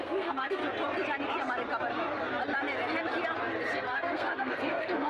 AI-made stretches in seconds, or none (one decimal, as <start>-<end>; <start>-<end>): 0.0-0.6; 3.7-5.1